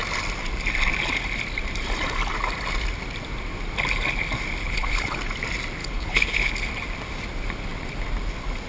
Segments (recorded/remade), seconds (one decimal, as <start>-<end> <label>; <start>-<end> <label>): 0.0-4.6 recorded; 4.6-5.2 remade; 5.2-5.8 recorded; 5.8-6.5 remade; 6.5-8.7 recorded